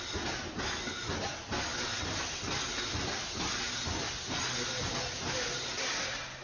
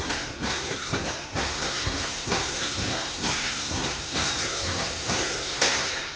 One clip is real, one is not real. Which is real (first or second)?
first